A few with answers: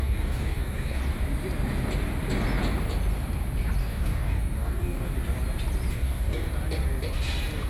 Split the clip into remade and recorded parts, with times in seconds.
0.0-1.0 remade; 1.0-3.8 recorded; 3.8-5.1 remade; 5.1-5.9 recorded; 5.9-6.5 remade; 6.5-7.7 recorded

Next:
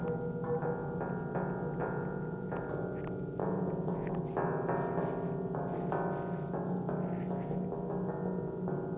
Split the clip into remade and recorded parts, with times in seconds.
0.0-1.8 recorded; 1.8-2.6 remade; 2.6-3.4 recorded; 3.4-4.2 remade; 4.2-9.0 recorded

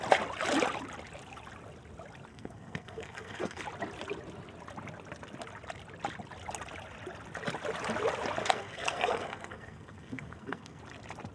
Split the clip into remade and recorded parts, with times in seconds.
0.0-2.3 recorded; 2.3-3.6 remade; 3.6-8.4 recorded; 8.4-10.8 remade; 10.8-11.3 recorded

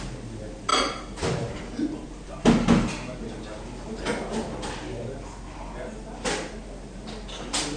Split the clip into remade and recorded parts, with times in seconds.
0.0-7.8 recorded

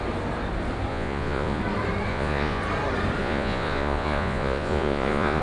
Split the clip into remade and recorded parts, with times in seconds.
0.0-0.9 recorded; 0.9-1.6 remade; 1.6-2.1 recorded; 2.1-2.6 remade; 2.6-3.2 recorded; 3.2-5.4 remade